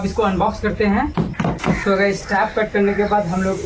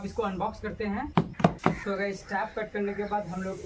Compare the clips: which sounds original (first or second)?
first